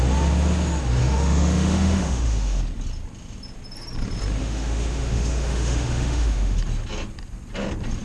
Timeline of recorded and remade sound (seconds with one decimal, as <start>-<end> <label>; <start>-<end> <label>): 0.0-1.0 recorded; 1.0-2.6 remade; 2.6-4.4 recorded; 4.4-6.6 remade; 6.6-8.0 recorded